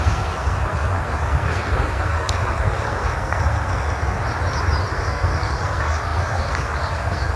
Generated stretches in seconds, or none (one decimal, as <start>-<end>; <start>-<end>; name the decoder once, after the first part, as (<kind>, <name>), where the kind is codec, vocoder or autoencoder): 0.0-4.2 (codec, SNAC); 4.9-7.4